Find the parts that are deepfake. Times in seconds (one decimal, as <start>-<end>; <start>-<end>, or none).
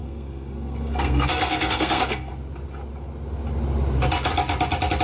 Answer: 0.0-2.3